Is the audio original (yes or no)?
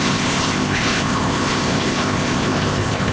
no